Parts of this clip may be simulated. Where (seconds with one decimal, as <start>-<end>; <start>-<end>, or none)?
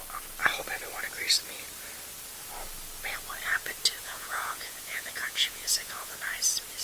4.0-6.1